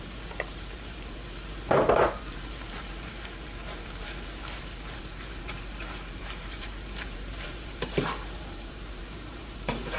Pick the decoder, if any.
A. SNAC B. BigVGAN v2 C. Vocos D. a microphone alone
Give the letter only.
B